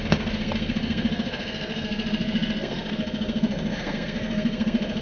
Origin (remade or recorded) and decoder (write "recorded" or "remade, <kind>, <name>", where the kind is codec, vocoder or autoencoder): remade, codec, SNAC